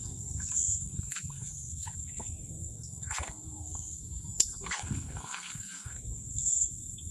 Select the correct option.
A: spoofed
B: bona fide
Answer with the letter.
A